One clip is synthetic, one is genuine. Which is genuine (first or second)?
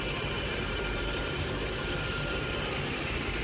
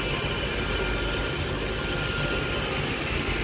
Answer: second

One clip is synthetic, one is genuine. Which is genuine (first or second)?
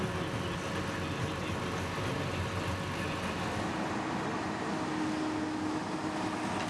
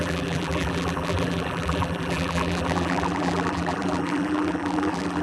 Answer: first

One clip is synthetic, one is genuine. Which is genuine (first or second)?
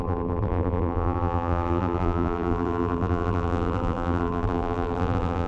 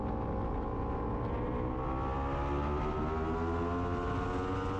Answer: second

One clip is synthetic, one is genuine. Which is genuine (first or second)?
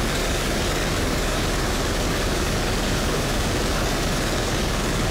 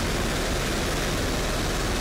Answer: second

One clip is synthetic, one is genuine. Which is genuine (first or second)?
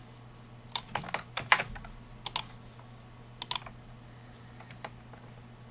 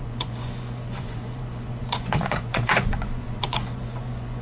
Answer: first